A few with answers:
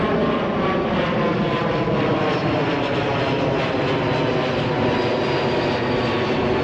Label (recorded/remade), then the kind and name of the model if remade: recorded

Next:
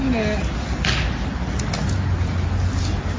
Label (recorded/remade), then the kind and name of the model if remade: recorded